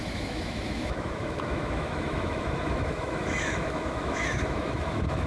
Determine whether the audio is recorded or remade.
remade